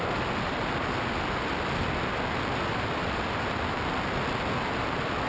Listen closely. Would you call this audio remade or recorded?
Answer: recorded